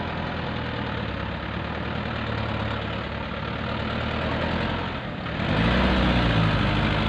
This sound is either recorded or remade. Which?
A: recorded